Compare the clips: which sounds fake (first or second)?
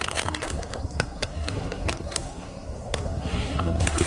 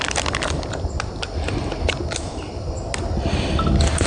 first